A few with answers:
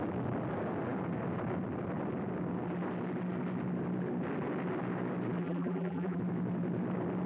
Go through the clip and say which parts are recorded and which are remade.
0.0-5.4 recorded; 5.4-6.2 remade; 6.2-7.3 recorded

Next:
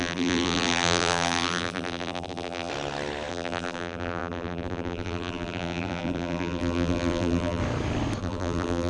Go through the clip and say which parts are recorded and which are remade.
0.0-2.7 remade; 2.7-3.3 recorded; 3.3-7.6 remade; 7.6-8.2 recorded; 8.2-8.9 remade

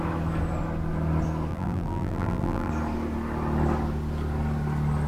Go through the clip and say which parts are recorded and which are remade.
0.0-1.5 recorded; 1.5-2.7 remade; 2.7-5.1 recorded